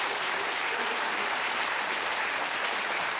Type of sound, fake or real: fake